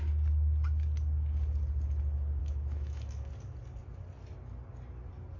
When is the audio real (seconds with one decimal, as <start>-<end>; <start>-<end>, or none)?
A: 0.0-2.4; 3.3-5.4